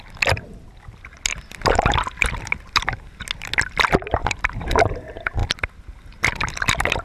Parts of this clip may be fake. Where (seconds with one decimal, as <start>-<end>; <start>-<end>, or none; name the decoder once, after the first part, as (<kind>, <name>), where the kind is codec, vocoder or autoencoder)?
4.2-4.8 (vocoder, BigVGAN v2); 5.4-7.0